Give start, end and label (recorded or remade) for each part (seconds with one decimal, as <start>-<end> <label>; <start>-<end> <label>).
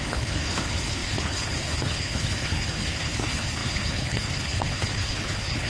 0.0-5.7 remade